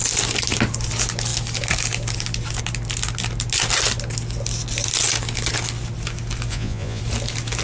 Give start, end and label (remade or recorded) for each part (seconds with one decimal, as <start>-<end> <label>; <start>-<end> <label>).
0.0-6.5 recorded; 6.5-7.0 remade; 7.0-7.6 recorded